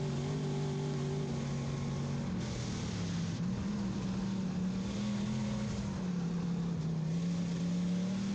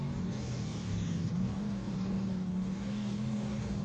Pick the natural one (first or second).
first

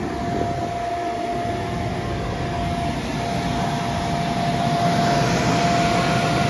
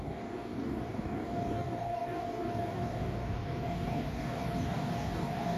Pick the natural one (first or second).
first